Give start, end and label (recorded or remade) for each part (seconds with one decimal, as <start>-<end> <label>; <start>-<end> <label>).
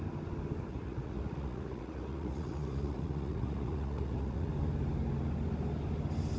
0.0-0.7 recorded; 0.7-4.5 remade; 4.5-6.4 recorded